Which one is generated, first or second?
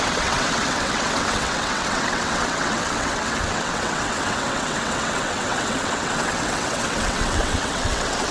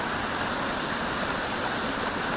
first